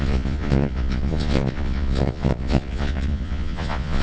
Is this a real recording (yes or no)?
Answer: no